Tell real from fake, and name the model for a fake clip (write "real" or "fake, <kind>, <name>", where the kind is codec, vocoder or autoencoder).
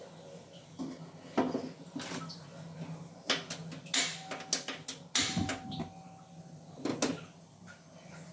real